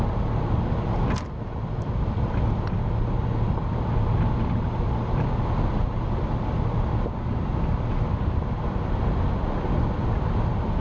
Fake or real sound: real